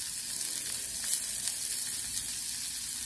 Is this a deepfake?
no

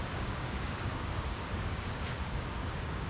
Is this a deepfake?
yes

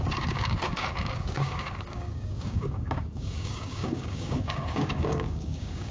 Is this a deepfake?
yes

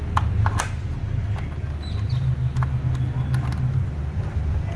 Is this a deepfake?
no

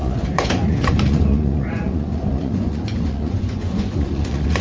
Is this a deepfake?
yes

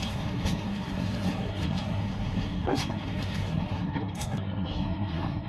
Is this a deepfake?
yes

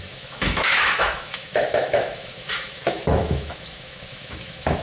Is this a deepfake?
yes